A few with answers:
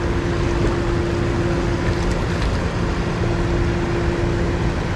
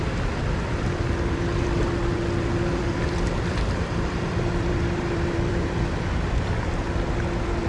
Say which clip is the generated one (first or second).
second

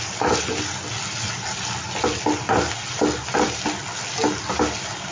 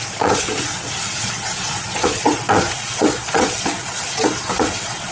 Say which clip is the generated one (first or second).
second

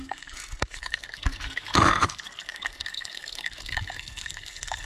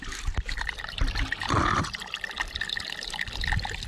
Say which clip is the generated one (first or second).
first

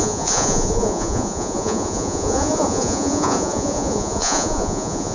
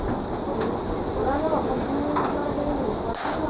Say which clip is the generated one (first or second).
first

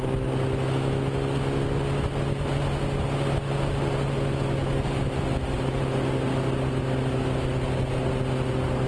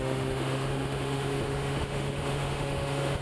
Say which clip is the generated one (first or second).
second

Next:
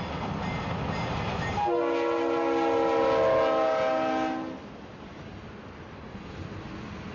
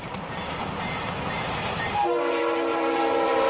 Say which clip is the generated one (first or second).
second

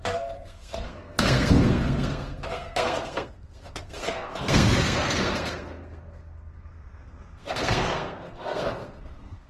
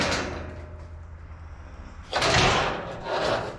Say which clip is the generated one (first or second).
first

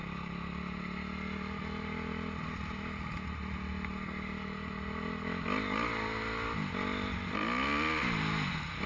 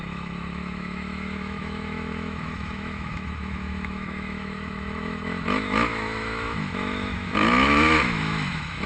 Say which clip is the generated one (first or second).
second